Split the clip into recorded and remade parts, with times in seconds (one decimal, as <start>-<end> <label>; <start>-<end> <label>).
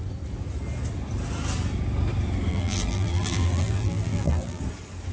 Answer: 0.0-2.5 recorded; 2.5-4.6 remade; 4.6-5.1 recorded